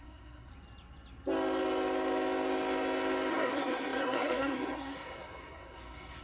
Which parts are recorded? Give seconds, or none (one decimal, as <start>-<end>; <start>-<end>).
0.5-3.3